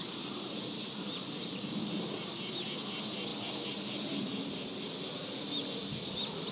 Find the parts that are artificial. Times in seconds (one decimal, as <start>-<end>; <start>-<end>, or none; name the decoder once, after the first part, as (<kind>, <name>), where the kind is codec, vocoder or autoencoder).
none